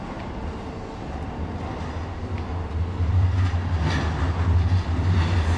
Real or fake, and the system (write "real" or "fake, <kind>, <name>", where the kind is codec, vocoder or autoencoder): real